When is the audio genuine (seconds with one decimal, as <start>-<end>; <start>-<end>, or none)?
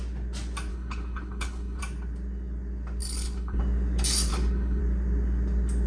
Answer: 0.0-0.7; 1.8-3.0; 3.6-4.3; 4.8-5.9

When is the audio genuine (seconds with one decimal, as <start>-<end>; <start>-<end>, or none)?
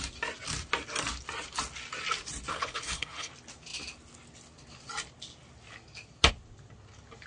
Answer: 0.0-2.5; 3.3-7.3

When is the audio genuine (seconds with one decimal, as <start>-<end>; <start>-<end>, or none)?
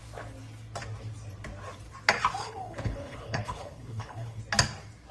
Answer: 0.0-2.4; 4.4-5.1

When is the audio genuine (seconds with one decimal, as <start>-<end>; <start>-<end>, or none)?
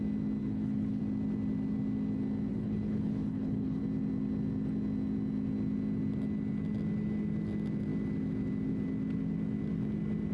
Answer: 0.0-0.4; 1.0-2.5; 3.8-10.3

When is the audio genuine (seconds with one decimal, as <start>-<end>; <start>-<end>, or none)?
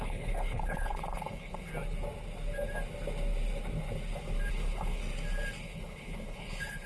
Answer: 1.7-4.5; 5.0-5.6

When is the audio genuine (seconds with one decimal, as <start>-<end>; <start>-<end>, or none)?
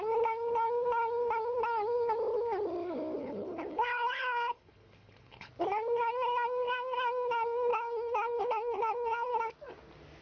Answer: 0.0-3.2; 5.5-7.7; 9.3-10.2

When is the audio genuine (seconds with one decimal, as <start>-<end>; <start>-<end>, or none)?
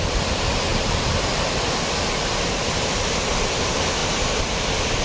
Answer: 0.0-5.0